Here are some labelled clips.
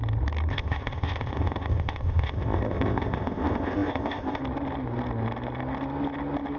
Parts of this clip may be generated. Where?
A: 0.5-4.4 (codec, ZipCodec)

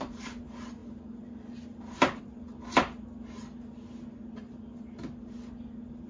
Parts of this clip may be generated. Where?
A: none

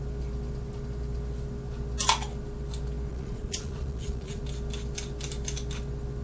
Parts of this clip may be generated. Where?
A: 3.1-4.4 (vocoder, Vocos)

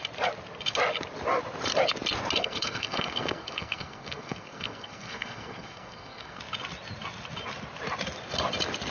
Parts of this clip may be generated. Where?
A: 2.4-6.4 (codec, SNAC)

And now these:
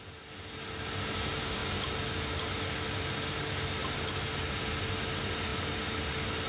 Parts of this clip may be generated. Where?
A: none

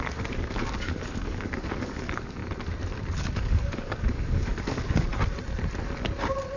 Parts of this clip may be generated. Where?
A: 0.0-2.4 (codec, DAC); 3.2-5.1